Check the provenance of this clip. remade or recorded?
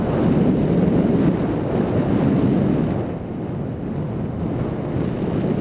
recorded